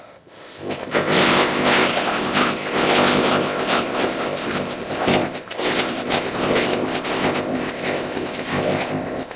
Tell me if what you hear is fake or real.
fake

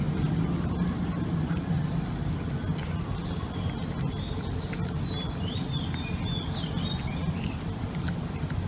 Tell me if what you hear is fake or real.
real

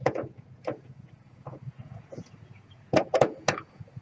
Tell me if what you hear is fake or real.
fake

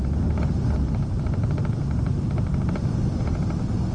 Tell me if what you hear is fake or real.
real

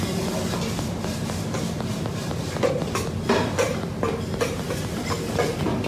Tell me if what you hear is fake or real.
real